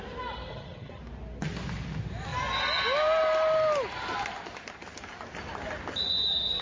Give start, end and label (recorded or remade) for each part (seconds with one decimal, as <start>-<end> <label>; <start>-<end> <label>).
0.0-0.5 recorded; 0.5-1.0 remade; 1.0-6.6 recorded